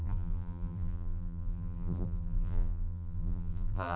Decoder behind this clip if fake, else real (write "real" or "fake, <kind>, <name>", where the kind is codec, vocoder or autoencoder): fake, vocoder, BigVGAN v2